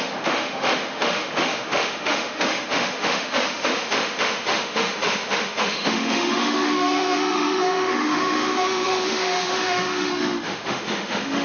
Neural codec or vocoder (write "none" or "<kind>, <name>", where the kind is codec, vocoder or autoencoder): autoencoder, DAC-VAE